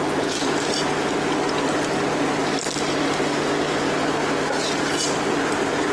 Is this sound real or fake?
real